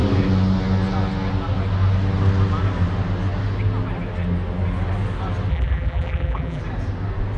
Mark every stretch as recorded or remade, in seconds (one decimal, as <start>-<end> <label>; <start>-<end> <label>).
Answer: 0.0-5.5 recorded; 5.5-6.6 remade; 6.6-7.4 recorded